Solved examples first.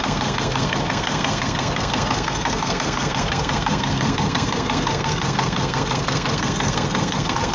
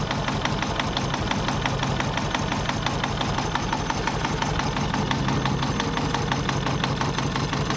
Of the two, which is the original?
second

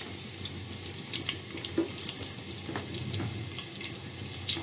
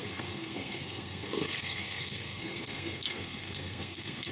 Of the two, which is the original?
first